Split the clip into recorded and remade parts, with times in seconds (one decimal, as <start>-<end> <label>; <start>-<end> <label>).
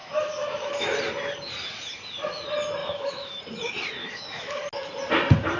0.0-1.0 remade; 1.0-2.8 recorded; 2.8-3.4 remade; 3.4-4.0 recorded; 4.0-4.6 remade; 4.6-5.6 recorded